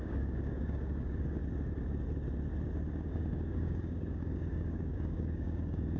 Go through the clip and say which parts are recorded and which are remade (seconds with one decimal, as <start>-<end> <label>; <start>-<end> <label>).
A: 0.0-1.4 remade; 1.4-2.9 recorded; 2.9-6.0 remade